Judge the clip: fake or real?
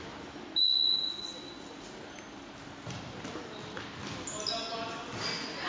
real